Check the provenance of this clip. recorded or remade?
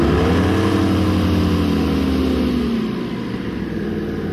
recorded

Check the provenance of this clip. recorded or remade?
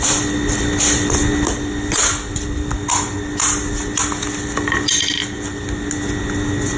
recorded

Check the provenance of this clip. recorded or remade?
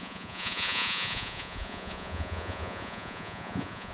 remade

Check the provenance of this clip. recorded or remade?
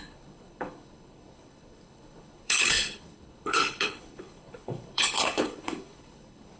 remade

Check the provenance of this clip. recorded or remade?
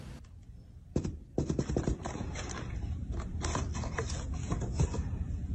remade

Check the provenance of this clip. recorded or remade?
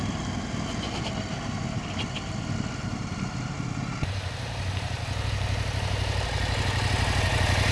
recorded